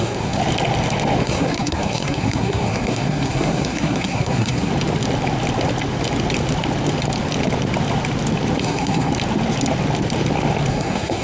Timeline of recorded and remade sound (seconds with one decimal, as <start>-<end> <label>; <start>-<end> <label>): 0.0-0.4 remade; 0.4-1.2 recorded; 1.2-4.7 remade; 4.7-8.6 recorded; 8.6-9.1 remade; 9.1-10.7 recorded; 10.7-11.2 remade